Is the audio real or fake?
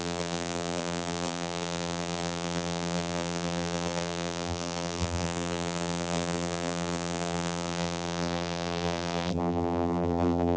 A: fake